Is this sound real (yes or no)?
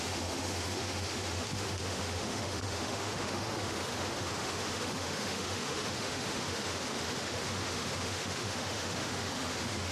no